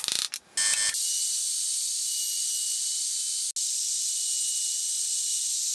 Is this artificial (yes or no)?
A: no